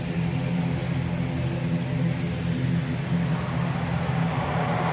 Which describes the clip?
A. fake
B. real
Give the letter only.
A